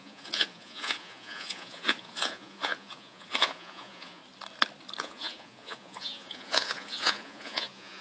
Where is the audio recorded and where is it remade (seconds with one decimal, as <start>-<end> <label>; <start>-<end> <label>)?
0.0-4.2 remade; 4.2-5.0 recorded; 5.0-8.0 remade